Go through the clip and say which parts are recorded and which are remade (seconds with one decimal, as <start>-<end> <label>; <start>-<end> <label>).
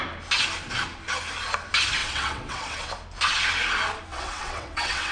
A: 0.0-2.0 recorded; 2.0-2.9 remade; 2.9-4.1 recorded; 4.1-5.1 remade